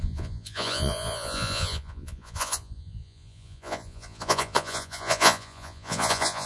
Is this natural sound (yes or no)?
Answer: no